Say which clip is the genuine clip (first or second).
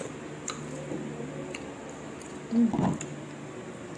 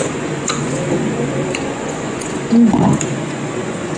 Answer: first